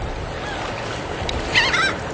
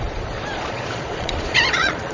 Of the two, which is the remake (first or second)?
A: second